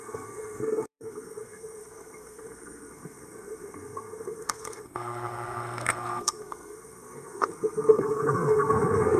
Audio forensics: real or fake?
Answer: fake